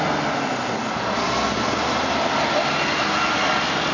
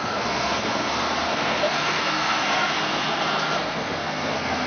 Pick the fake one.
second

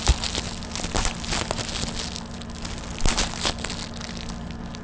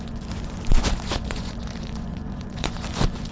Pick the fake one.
second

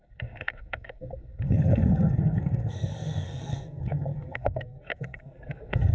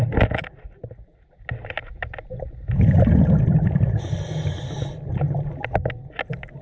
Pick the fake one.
first